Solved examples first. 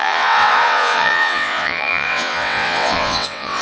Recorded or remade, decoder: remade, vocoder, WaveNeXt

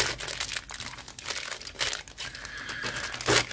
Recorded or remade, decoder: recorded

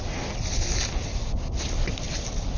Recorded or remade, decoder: recorded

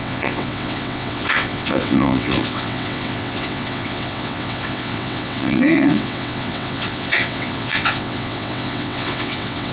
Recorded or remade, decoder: remade, vocoder, WaveNeXt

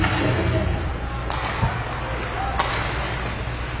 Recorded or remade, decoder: recorded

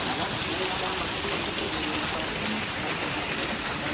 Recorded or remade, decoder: recorded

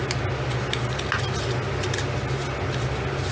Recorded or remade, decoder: recorded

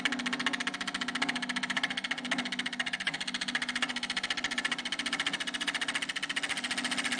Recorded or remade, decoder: recorded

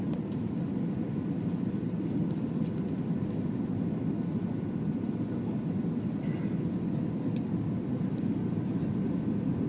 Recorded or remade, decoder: recorded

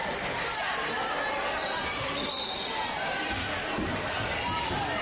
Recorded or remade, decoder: recorded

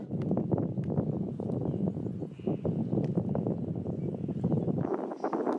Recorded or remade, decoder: recorded